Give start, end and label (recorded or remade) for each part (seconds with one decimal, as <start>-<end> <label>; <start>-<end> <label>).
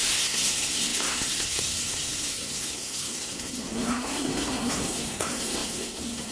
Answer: 0.0-6.3 remade